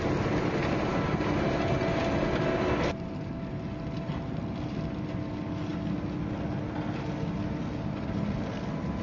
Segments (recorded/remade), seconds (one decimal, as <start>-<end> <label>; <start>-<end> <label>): 0.0-9.0 recorded